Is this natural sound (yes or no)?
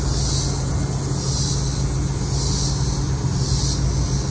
yes